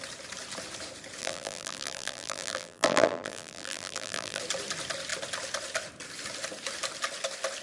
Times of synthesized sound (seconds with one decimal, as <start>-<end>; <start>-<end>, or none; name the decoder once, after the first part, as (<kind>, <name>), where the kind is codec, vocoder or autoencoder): 1.2-4.4 (vocoder, BigVGAN v2)